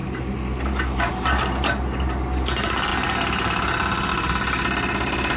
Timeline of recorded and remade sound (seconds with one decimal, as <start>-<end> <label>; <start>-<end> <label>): 0.0-1.1 remade; 1.1-5.4 recorded